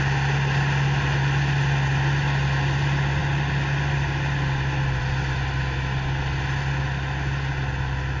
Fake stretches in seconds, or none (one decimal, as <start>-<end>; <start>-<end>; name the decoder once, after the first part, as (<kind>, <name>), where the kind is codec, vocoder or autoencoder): none